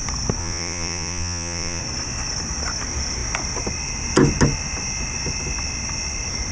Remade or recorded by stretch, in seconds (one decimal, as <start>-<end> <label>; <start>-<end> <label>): 0.0-0.4 recorded; 0.4-1.8 remade; 1.8-6.5 recorded

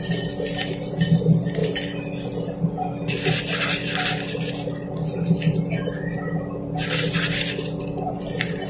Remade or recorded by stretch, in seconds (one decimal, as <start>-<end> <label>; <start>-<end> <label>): 0.0-8.7 recorded

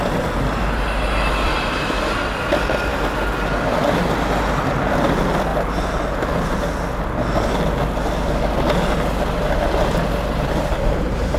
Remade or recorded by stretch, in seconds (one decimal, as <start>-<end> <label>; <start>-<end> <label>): 0.0-11.4 recorded

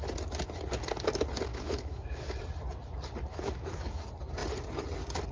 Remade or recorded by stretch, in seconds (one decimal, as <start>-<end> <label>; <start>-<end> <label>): 0.0-1.5 recorded; 1.5-2.4 remade; 2.4-3.3 recorded; 3.3-4.0 remade; 4.0-5.3 recorded

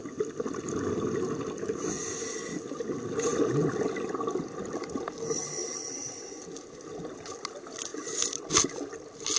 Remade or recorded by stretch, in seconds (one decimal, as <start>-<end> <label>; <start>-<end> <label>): 0.0-9.4 recorded